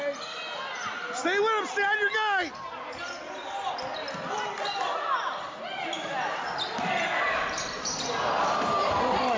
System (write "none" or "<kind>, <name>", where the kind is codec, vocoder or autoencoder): none